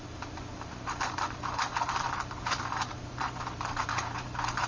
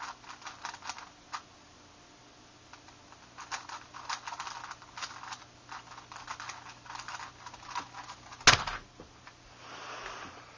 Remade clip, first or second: first